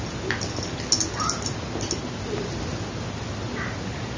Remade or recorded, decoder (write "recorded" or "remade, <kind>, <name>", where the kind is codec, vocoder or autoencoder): recorded